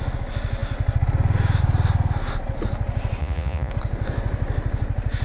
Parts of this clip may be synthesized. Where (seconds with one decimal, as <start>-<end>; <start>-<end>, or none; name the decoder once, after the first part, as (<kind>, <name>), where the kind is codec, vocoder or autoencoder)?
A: 3.2-3.7 (vocoder, Vocos)